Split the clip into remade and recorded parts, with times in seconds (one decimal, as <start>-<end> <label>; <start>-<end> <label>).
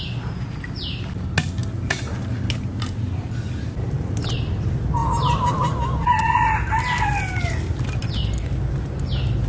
0.0-1.6 recorded; 1.6-2.5 remade; 2.5-5.0 recorded; 5.0-5.5 remade; 5.5-9.5 recorded